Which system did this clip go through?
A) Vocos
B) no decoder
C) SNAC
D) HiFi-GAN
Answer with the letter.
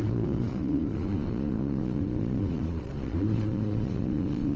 A